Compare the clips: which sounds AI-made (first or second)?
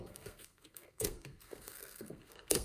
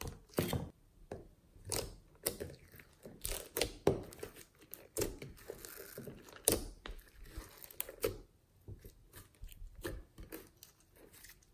first